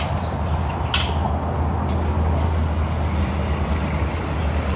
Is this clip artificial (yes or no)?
no